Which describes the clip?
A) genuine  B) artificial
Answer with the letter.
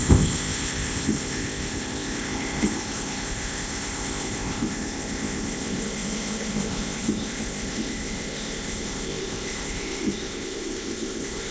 B